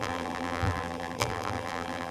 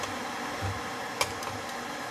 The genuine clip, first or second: second